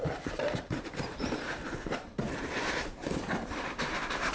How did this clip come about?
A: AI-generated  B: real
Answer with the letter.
A